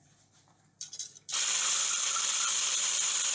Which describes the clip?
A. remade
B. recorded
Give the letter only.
A